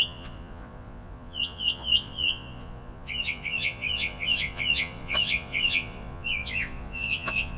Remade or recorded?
remade